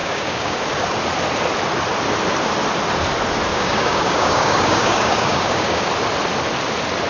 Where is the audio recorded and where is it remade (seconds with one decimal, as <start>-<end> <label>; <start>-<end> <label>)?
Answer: 0.0-0.6 remade; 0.6-3.5 recorded; 3.5-5.9 remade; 5.9-7.1 recorded